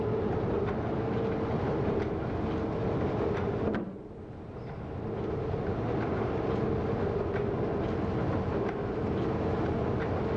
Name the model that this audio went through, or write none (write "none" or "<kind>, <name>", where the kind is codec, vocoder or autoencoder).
none